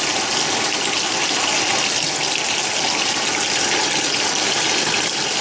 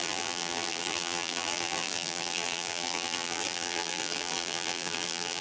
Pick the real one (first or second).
first